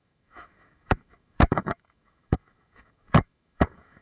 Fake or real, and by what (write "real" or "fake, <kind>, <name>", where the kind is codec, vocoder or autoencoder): fake, autoencoder, DAC-VAE